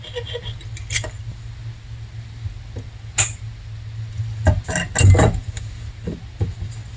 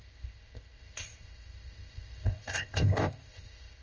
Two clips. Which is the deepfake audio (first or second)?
second